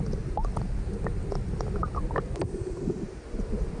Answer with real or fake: real